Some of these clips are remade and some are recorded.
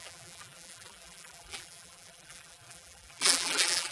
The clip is remade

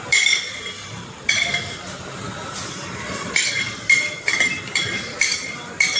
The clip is remade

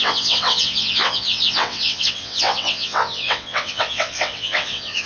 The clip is remade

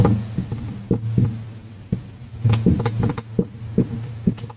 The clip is recorded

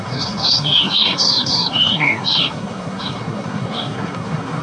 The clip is remade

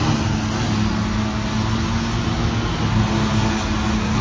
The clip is recorded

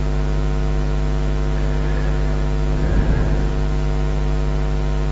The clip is recorded